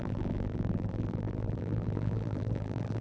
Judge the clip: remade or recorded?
remade